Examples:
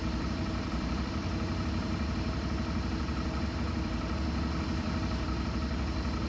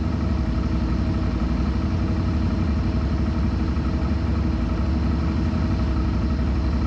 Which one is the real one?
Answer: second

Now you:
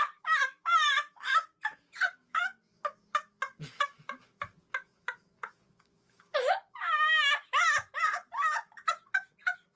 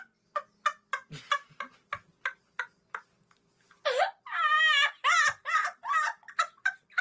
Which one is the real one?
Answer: second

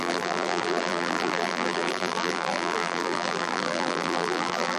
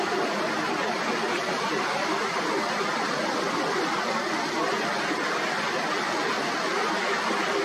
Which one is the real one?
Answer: second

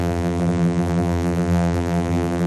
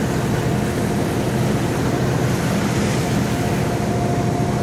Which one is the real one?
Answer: second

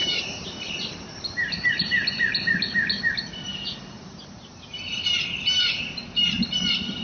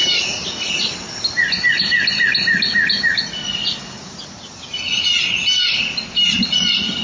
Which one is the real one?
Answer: second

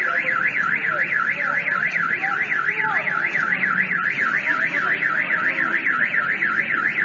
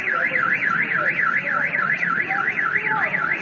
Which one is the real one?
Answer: first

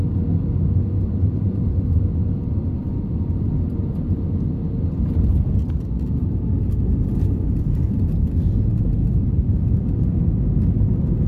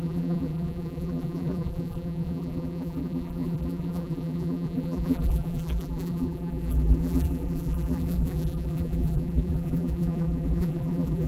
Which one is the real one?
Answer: first